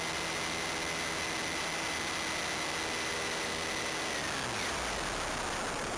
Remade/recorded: recorded